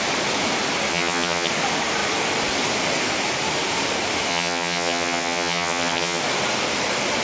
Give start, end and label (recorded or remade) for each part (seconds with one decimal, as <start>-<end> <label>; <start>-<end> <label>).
0.0-0.9 recorded; 0.9-1.5 remade; 1.5-4.3 recorded; 4.3-6.2 remade; 6.2-7.2 recorded